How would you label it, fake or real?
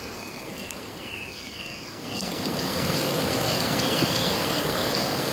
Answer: fake